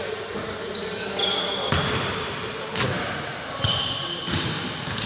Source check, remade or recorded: remade